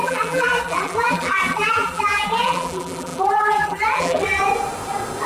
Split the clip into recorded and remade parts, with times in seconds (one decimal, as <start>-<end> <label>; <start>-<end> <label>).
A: 0.0-4.4 remade; 4.4-5.3 recorded